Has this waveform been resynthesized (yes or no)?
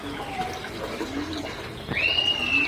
no